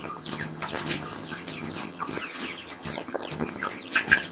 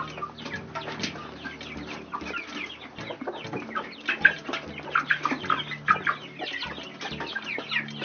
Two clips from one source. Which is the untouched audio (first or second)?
second